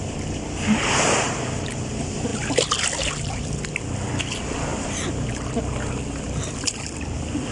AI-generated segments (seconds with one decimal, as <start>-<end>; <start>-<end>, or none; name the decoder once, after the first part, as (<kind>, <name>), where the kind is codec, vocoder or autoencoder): none